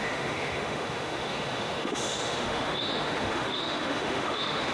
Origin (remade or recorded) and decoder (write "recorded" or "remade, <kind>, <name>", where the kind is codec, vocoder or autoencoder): remade, autoencoder, DAC-VAE